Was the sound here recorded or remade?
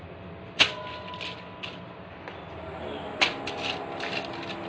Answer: recorded